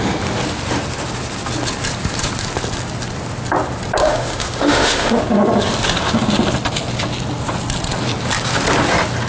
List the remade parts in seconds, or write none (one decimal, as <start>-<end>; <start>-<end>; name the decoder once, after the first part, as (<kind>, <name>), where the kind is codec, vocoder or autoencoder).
4.0-5.2 (autoencoder, DAC-VAE)